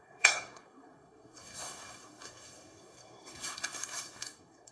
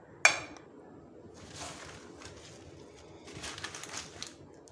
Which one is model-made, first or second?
first